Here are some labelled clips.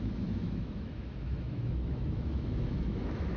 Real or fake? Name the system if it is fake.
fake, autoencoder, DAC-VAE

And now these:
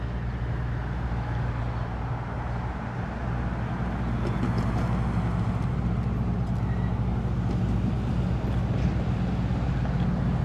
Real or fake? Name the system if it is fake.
real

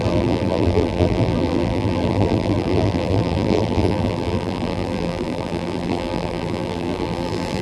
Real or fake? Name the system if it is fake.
fake, vocoder, BigVGAN v2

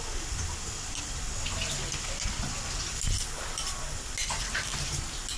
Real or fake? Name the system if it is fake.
real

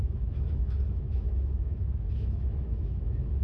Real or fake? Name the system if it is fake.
fake, autoencoder, DAC-VAE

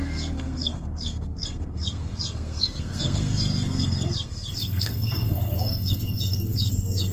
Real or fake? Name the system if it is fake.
fake, codec, SNAC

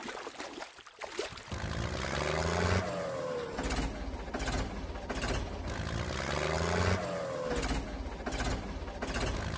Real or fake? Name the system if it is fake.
real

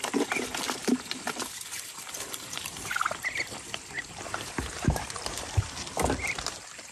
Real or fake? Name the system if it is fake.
fake, vocoder, BigVGAN v2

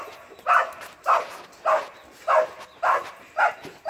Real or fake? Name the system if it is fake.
real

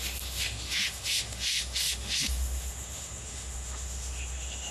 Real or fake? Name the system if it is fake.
fake, autoencoder, DAC-VAE